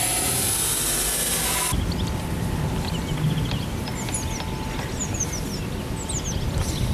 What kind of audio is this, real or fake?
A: real